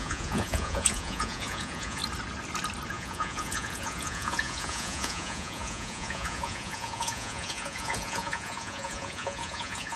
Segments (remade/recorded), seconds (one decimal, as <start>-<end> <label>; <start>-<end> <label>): 0.0-2.0 remade; 2.0-2.9 recorded; 2.9-10.0 remade